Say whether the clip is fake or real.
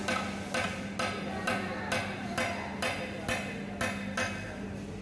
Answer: real